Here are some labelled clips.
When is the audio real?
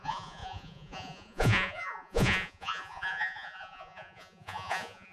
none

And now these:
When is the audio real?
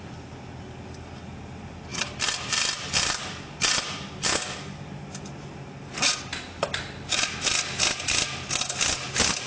0.0-9.5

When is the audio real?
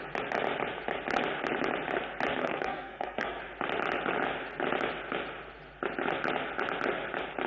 0.0-2.4; 3.4-7.5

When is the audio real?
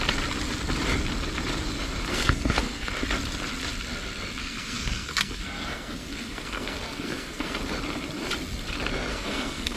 0.0-2.1; 2.9-4.4; 7.6-9.1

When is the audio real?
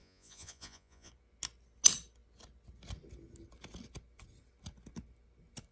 1.1-5.7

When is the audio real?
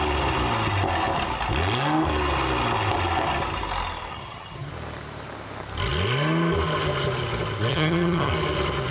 0.0-4.1; 4.7-7.7; 8.3-8.9